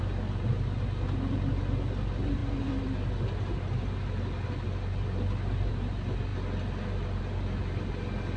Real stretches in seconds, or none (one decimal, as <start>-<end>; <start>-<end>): 0.0-8.4